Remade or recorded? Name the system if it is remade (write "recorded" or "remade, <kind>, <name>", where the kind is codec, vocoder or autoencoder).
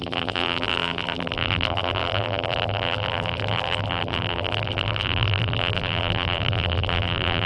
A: remade, vocoder, BigVGAN v2